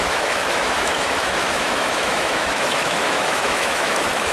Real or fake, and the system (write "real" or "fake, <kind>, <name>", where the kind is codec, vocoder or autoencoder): fake, autoencoder, DAC-VAE